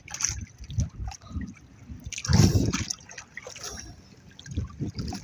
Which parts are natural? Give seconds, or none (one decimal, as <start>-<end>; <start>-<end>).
0.0-5.2